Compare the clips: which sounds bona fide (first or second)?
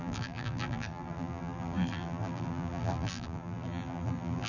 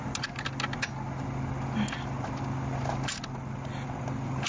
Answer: second